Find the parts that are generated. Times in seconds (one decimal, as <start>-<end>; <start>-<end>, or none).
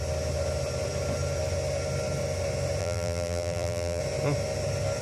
2.8-4.0